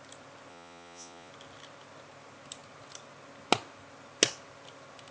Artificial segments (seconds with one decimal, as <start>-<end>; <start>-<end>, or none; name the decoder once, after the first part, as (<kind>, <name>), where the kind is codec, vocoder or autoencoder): 0.5-1.3 (vocoder, Vocos)

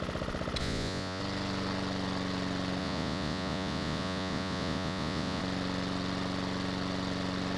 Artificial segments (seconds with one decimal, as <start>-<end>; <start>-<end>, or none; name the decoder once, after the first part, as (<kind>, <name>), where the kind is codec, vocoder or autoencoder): 0.6-1.2 (vocoder, Vocos); 2.8-5.4

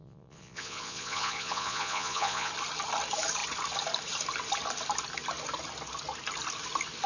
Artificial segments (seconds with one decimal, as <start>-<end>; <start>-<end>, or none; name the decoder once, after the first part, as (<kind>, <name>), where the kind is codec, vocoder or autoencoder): 0.0-2.5 (vocoder, Vocos)

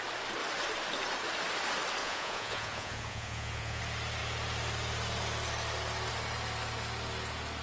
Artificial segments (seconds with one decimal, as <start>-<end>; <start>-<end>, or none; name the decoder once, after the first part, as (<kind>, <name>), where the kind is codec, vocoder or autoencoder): 2.0-3.8 (vocoder, Vocos)

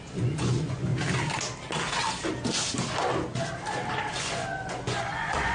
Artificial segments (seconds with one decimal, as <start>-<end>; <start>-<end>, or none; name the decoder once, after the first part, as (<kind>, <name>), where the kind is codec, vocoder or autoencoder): 0.0-0.9 (vocoder, Vocos); 4.2-5.5

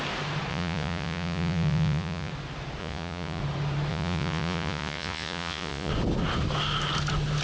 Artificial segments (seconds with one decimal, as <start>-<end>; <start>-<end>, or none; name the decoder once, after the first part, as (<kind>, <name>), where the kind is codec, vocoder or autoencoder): 0.5-2.3 (vocoder, Vocos); 2.8-3.4; 3.9-5.9

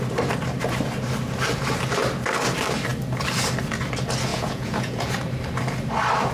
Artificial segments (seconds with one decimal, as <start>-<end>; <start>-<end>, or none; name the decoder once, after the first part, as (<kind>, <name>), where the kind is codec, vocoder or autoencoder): 4.3-5.1 (vocoder, Vocos)

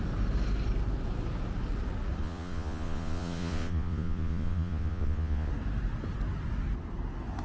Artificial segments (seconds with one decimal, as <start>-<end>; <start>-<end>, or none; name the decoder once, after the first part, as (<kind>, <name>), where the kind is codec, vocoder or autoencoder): 2.2-5.5 (vocoder, Vocos)